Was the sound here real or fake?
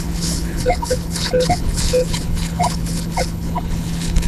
fake